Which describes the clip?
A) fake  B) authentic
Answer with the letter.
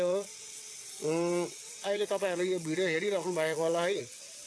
A